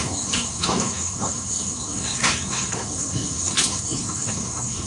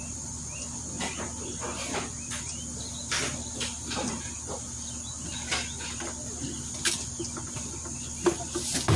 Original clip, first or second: second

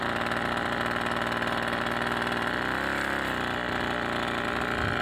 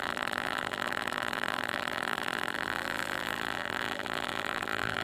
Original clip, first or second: first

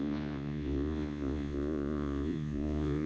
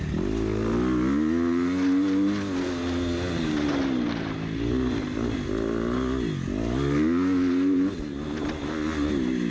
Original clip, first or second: second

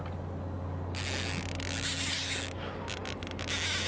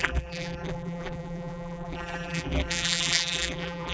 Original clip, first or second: first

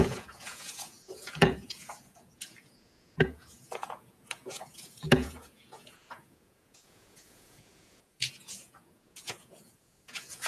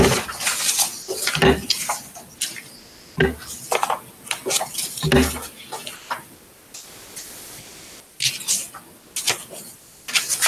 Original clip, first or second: second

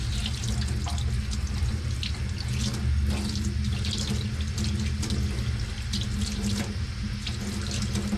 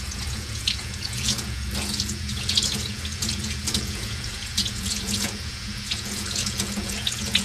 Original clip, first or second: first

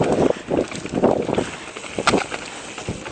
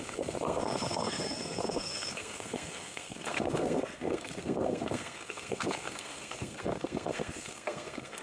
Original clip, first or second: first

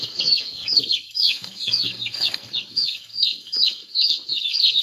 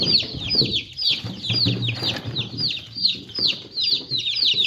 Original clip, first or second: second